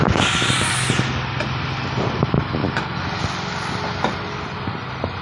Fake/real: real